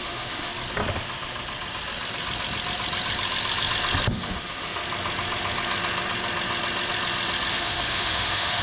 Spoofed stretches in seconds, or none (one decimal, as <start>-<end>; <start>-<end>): 0.0-0.5; 4.1-4.8; 7.5-8.6